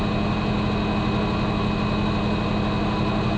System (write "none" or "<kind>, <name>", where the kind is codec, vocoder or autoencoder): none